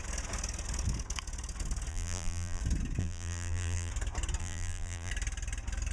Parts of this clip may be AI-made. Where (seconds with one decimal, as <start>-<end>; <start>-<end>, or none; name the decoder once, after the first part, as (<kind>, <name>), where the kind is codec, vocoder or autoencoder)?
1.9-2.6 (vocoder, BigVGAN v2); 3.0-3.9; 4.4-5.1